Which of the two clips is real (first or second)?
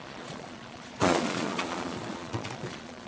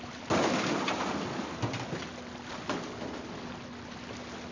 second